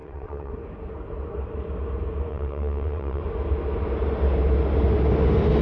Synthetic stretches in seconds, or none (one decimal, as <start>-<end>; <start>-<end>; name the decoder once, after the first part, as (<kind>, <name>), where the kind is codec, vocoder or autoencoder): 0.0-0.5 (vocoder, WaveNeXt); 2.3-3.2